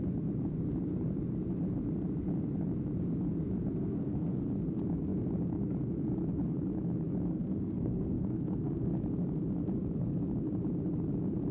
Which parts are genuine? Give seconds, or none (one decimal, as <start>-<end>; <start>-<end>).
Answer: 0.0-3.7; 4.4-7.3; 8.9-11.5